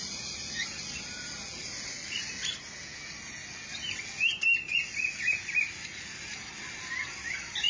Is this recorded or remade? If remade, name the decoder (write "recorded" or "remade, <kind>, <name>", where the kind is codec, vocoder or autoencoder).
recorded